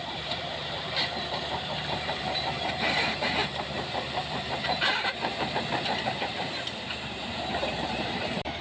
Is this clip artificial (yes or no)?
yes